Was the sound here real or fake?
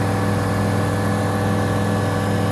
real